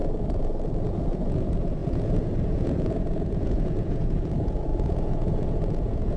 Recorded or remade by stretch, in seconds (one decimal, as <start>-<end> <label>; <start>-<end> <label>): 0.0-1.1 recorded; 1.1-6.2 remade